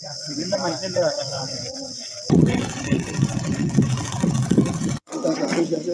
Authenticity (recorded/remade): remade